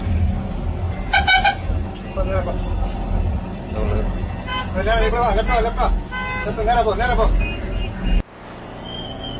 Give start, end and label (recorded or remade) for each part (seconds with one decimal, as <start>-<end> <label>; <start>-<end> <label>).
0.0-9.4 recorded